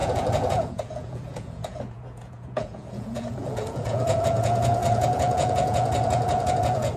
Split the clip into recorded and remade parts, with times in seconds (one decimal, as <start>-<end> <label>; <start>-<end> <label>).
0.0-7.0 remade